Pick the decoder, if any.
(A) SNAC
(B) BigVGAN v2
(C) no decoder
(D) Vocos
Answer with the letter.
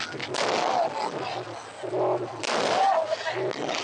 C